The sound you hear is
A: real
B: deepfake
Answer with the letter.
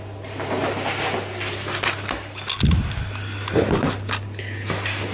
A